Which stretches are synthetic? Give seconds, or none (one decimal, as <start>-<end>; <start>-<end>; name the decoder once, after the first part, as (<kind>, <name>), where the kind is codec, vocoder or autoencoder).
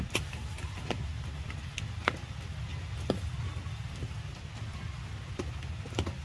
none